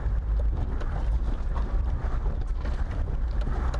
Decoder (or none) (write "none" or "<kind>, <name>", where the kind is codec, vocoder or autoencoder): vocoder, BigVGAN v2